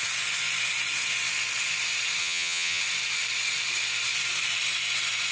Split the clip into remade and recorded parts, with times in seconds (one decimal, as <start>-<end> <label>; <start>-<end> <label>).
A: 0.0-2.2 recorded; 2.2-2.8 remade; 2.8-5.3 recorded